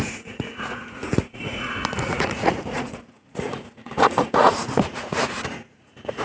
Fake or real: fake